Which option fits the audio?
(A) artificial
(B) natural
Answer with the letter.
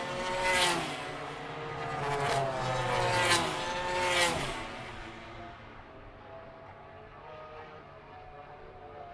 B